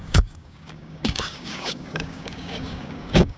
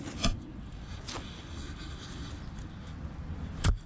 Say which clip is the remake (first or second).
first